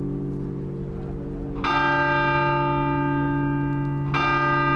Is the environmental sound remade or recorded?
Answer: recorded